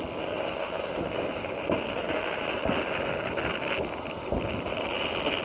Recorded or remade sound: recorded